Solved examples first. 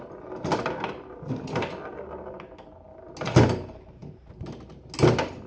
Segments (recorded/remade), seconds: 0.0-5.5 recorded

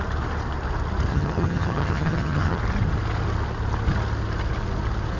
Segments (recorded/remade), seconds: 0.0-1.1 recorded; 1.1-2.6 remade; 2.6-5.2 recorded

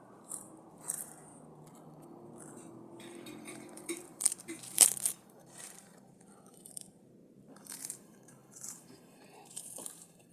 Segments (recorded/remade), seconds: 0.0-1.3 remade; 1.3-2.7 recorded; 2.7-10.3 remade

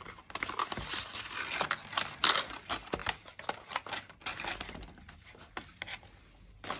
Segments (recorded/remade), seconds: 0.0-6.8 recorded

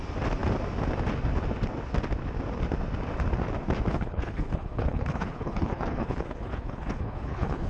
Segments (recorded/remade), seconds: 0.0-3.9 recorded; 3.9-7.7 remade

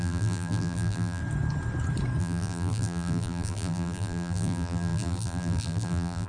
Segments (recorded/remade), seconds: 0.0-1.2 remade; 1.2-2.2 recorded; 2.2-6.3 remade

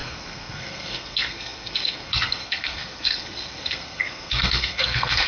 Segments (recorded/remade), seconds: 0.0-5.3 remade